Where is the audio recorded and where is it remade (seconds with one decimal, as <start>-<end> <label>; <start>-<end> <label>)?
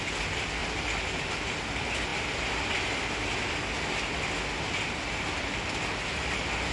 0.0-0.6 recorded; 0.6-1.4 remade; 1.4-2.1 recorded; 2.1-2.8 remade; 2.8-6.7 recorded